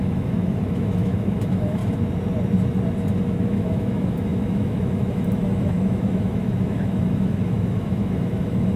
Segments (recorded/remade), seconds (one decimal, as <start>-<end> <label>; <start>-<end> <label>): 0.0-1.8 remade; 1.8-3.3 recorded; 3.3-8.8 remade